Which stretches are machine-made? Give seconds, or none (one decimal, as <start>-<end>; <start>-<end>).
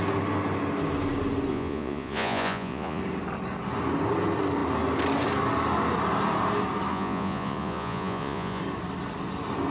1.5-3.0; 6.9-8.6